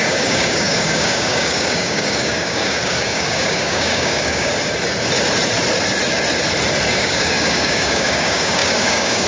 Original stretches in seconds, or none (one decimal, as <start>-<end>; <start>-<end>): 4.5-6.9